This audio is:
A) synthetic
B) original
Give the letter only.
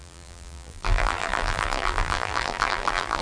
A